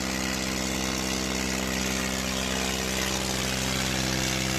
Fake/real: real